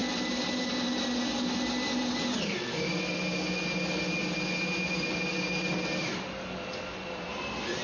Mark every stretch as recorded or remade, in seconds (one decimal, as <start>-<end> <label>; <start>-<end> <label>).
0.0-7.8 recorded